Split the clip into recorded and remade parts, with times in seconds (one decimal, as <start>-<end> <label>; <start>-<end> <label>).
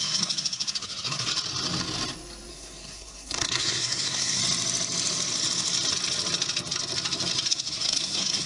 0.0-1.3 remade; 1.3-2.5 recorded; 2.5-4.4 remade; 4.4-7.5 recorded; 7.5-8.5 remade